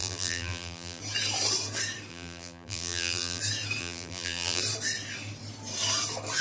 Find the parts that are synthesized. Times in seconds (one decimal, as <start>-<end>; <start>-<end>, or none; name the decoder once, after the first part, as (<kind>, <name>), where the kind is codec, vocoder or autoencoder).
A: 0.0-1.0 (vocoder, BigVGAN v2); 2.1-3.4; 3.8-4.6